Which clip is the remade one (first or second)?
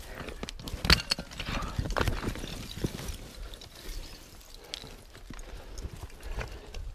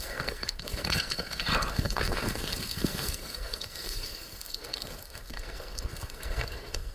second